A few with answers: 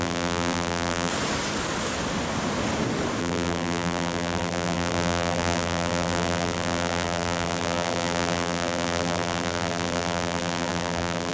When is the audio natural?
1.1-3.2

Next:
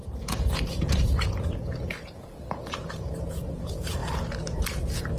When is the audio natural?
4.0-5.2